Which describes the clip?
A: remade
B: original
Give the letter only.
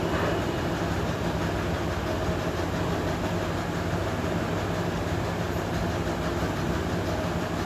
B